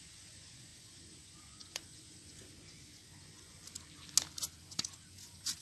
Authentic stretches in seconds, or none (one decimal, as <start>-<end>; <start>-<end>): 3.6-4.6